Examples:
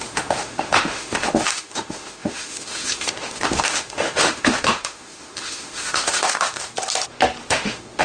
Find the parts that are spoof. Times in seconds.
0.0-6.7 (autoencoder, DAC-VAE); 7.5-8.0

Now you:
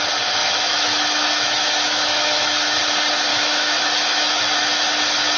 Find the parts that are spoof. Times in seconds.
0.4-2.8 (autoencoder, DAC-VAE); 3.3-4.4

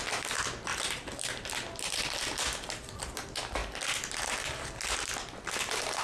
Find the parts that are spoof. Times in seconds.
none